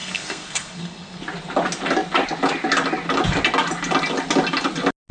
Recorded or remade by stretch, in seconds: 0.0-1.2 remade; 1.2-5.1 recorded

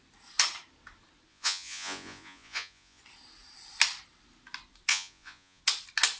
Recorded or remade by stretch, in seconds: 0.0-1.3 recorded; 1.3-3.0 remade; 3.0-4.9 recorded; 4.9-5.6 remade; 5.6-6.2 recorded

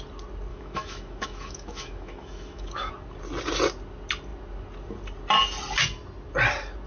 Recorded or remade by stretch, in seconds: 0.0-0.5 recorded; 0.5-2.9 remade; 2.9-6.9 recorded

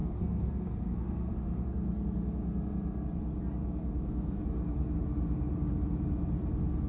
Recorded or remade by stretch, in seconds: 0.0-1.3 remade; 1.3-3.8 recorded; 3.8-4.4 remade; 4.4-6.9 recorded

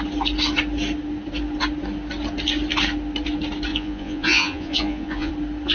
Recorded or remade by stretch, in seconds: 0.0-3.7 recorded; 3.7-5.3 remade; 5.3-5.7 recorded

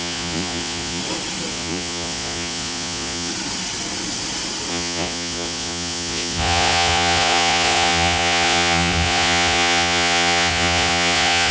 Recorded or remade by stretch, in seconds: 0.0-1.0 remade; 1.0-1.5 recorded; 1.5-3.3 remade; 3.3-4.7 recorded; 4.7-11.5 remade

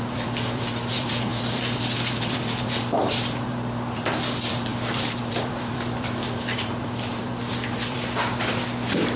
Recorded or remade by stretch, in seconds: 0.0-9.2 remade